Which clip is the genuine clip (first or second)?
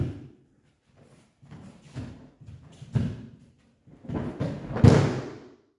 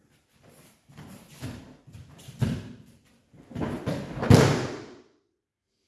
first